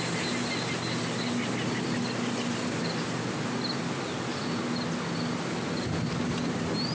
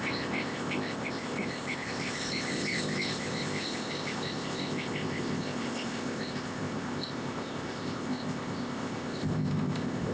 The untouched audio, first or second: first